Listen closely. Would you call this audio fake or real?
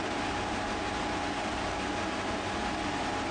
real